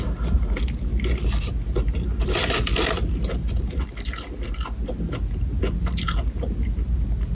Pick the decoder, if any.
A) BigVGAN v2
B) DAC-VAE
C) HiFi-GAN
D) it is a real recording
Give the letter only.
D